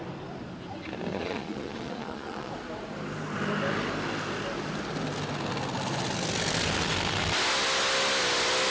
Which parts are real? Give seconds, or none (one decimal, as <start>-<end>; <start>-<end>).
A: 0.0-1.1; 2.5-8.7